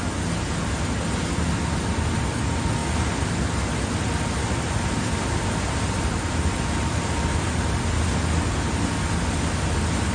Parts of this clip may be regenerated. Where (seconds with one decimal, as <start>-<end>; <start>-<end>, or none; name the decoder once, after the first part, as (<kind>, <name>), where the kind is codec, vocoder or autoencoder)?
none